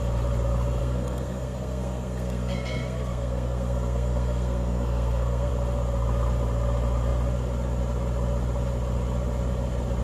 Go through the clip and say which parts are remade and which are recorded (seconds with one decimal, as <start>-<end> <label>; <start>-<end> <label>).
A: 0.0-0.8 recorded; 0.8-5.5 remade; 5.5-10.0 recorded